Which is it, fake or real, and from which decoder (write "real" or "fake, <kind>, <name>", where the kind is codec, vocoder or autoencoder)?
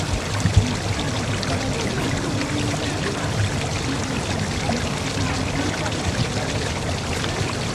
real